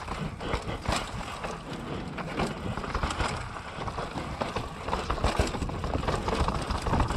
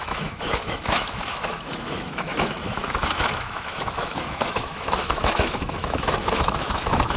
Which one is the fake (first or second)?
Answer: second